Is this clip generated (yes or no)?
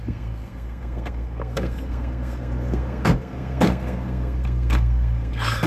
yes